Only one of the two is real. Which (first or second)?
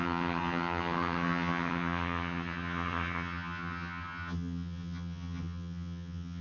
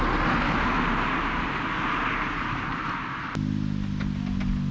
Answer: second